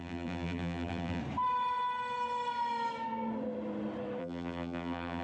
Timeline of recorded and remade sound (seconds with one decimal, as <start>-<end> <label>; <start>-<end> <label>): 0.0-1.2 remade; 1.2-4.2 recorded; 4.2-5.2 remade

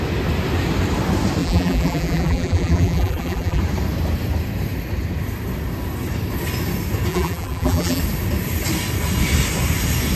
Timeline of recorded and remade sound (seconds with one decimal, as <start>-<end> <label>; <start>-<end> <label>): 0.0-1.4 recorded; 1.4-3.6 remade; 3.6-7.1 recorded; 7.1-8.0 remade; 8.0-10.2 recorded

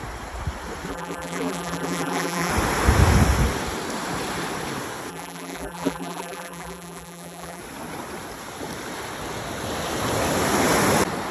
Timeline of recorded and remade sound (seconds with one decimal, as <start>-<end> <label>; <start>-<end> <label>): 0.0-0.9 recorded; 0.9-2.5 remade; 2.5-5.1 recorded; 5.1-7.6 remade; 7.6-11.3 recorded

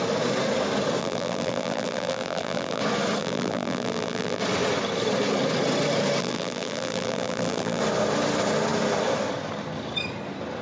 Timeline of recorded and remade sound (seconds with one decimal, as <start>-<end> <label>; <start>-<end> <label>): 0.0-1.0 recorded; 1.0-2.8 remade; 2.8-3.2 recorded; 3.2-4.4 remade; 4.4-6.2 recorded; 6.2-7.8 remade; 7.8-10.6 recorded

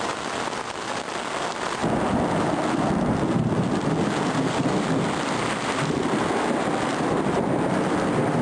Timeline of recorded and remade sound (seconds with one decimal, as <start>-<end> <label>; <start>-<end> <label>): 0.0-8.4 recorded

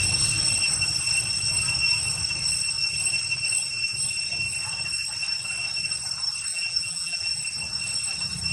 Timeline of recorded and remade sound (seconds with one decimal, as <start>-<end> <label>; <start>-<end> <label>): 0.0-6.5 recorded; 6.5-7.4 remade; 7.4-8.5 recorded

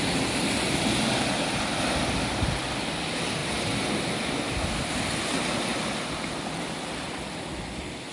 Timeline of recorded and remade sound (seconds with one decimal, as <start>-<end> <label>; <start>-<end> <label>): 0.0-3.4 recorded; 3.4-5.1 remade; 5.1-8.1 recorded

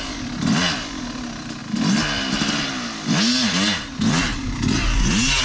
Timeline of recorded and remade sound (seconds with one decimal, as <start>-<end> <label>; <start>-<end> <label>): 0.0-5.4 recorded